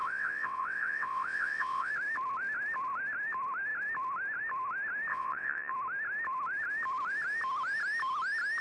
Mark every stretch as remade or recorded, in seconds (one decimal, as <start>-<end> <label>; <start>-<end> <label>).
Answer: 0.0-1.9 remade; 1.9-5.1 recorded; 5.1-5.7 remade; 5.7-8.6 recorded